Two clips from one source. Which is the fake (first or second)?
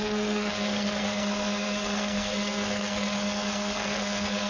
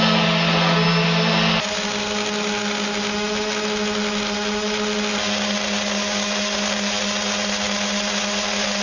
first